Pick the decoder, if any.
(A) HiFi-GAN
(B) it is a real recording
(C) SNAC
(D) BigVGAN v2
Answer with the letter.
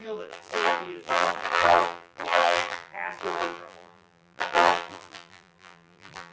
D